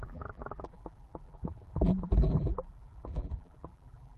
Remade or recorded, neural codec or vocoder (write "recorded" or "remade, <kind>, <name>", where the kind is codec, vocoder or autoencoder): remade, vocoder, BigVGAN v2